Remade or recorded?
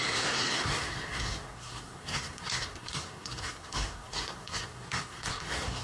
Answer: remade